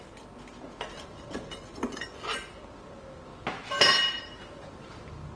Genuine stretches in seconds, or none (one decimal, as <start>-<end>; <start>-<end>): 0.0-1.7; 2.5-5.4